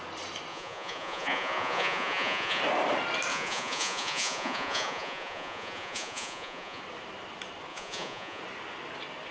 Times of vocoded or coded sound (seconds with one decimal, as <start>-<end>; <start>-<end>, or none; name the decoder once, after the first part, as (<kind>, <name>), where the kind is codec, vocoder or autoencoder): 0.5-2.6 (vocoder, Vocos); 3.3-6.8; 7.7-8.4